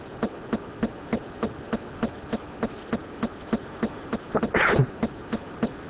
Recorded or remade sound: recorded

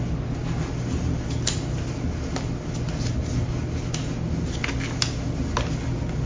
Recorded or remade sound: recorded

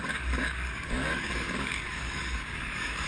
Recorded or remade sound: remade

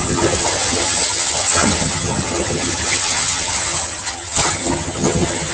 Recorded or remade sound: remade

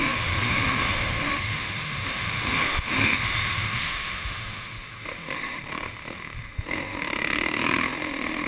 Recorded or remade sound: remade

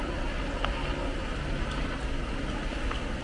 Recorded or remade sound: recorded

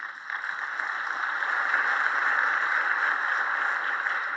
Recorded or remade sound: recorded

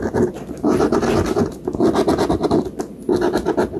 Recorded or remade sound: recorded